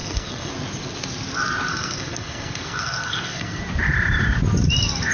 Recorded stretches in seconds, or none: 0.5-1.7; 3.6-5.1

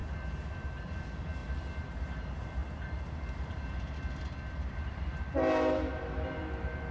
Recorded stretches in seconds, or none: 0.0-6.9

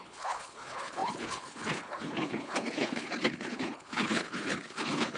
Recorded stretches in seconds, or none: none